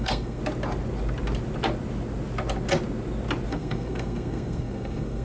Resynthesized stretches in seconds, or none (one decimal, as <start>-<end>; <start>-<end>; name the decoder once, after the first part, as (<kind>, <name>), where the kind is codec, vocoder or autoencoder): 0.0-0.4 (codec, SNAC); 3.5-5.2